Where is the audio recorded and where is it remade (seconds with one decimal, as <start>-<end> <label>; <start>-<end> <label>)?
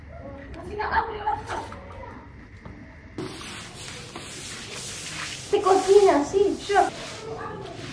0.0-0.4 recorded; 0.4-1.6 remade; 1.6-7.9 recorded